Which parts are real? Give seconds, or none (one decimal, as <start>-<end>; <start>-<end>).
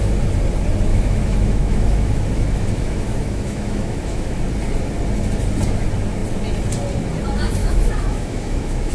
0.0-0.9; 4.4-7.6